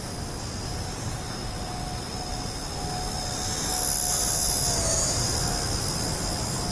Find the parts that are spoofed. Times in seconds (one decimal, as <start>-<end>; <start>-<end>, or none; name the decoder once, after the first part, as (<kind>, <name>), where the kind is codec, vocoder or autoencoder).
none